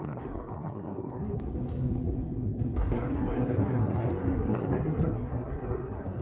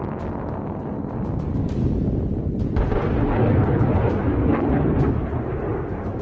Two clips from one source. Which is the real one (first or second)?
second